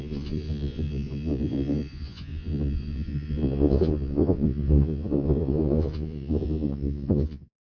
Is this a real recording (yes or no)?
no